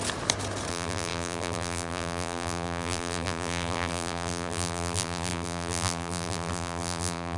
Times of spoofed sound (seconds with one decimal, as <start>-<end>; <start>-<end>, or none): 0.7-7.4